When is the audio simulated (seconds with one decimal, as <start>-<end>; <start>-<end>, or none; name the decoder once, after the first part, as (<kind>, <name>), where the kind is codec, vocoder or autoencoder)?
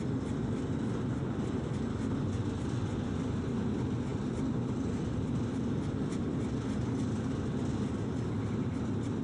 none